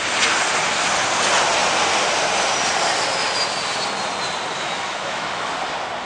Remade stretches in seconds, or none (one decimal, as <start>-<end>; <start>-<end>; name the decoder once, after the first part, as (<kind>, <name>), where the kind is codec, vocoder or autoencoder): 4.5-5.5 (autoencoder, DAC-VAE)